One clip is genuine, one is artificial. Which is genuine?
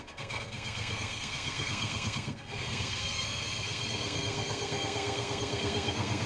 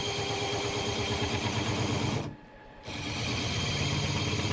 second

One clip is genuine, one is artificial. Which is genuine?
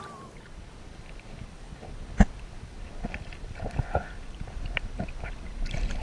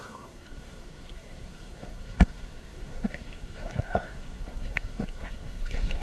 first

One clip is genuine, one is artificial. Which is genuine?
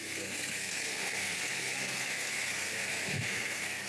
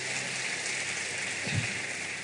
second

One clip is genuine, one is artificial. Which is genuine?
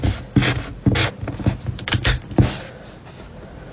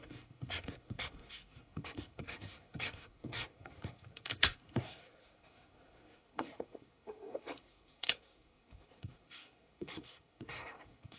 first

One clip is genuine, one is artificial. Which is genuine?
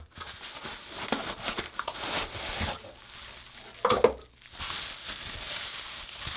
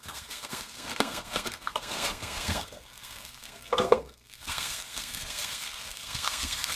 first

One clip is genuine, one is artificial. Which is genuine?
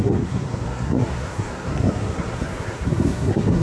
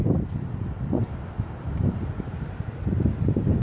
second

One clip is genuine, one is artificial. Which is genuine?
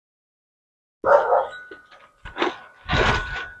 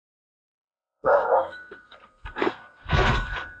first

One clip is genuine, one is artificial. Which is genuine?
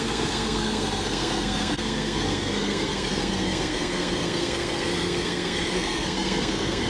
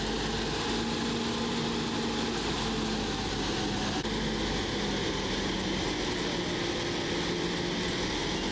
second